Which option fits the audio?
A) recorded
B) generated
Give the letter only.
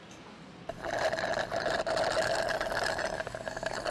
A